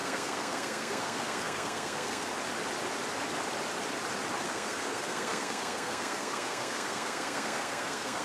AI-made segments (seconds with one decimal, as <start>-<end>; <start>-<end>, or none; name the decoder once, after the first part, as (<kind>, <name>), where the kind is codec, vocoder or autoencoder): 0.0-2.3 (codec, SNAC); 4.4-8.2